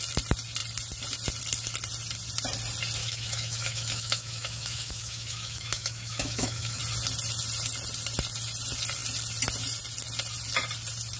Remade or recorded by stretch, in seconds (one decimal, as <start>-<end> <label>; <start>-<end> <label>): 0.0-3.0 recorded; 3.0-6.8 remade; 6.8-11.2 recorded